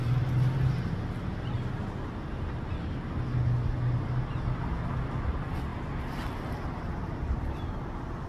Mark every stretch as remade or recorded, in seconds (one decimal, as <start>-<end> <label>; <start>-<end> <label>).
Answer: 0.0-8.3 recorded